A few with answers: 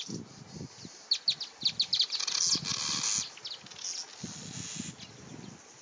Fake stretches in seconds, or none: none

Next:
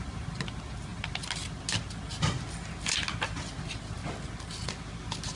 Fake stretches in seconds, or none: none

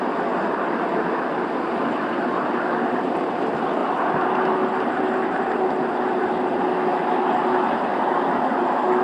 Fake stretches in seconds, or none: none

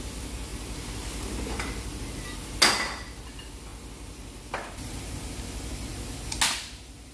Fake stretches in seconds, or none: none

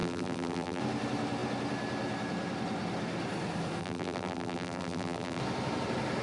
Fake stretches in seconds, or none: 0.0-0.8 (vocoder, BigVGAN v2); 3.8-5.4

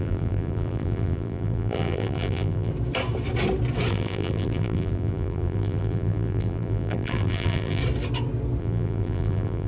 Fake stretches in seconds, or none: 0.0-2.7 (vocoder, BigVGAN v2); 3.9-7.8; 8.6-9.7